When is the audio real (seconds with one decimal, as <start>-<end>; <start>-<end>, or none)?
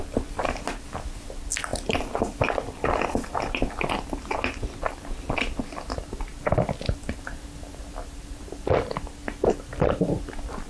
0.0-10.7